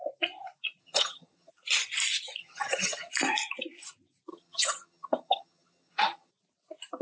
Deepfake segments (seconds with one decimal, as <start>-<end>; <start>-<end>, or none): 0.8-1.5; 2.4-3.1; 4.3-6.3